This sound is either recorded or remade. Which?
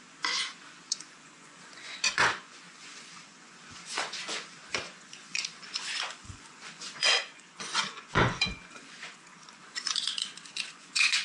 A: remade